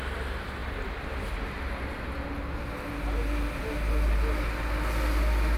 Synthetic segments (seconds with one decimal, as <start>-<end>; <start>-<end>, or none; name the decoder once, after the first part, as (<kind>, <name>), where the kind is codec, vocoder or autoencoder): none